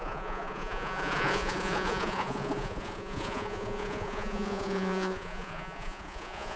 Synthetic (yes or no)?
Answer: yes